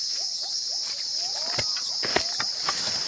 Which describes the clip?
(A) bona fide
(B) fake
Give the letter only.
A